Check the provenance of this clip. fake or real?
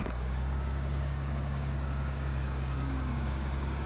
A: fake